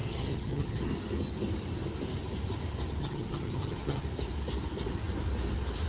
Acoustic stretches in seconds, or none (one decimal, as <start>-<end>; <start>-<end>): 0.9-3.0; 4.0-5.9